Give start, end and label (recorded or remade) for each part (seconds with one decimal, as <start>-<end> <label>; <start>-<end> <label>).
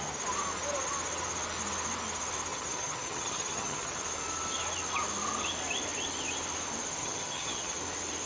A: 0.0-2.5 recorded; 2.5-4.0 remade; 4.0-7.0 recorded; 7.0-7.8 remade; 7.8-8.3 recorded